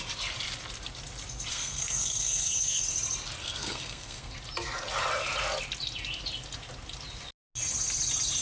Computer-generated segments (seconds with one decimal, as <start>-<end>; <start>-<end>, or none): 1.5-2.8; 3.4-4.3